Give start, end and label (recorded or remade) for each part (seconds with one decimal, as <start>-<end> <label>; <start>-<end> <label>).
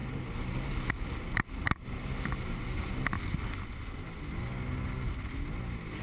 0.0-0.9 remade; 0.9-1.6 recorded; 1.6-2.9 remade; 2.9-6.0 recorded